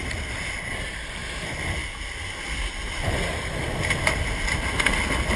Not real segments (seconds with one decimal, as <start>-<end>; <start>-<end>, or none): none

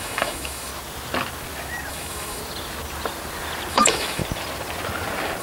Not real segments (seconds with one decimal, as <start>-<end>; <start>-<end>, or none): 0.0-0.7; 1.9-2.4; 3.7-4.2

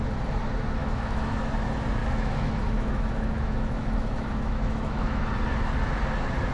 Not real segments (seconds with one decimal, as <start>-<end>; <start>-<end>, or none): 0.8-1.5; 2.0-5.2

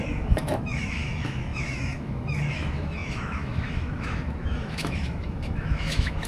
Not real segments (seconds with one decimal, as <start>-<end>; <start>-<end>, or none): 0.0-6.3